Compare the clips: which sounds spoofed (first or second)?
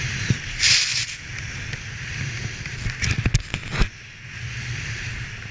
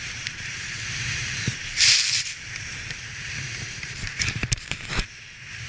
second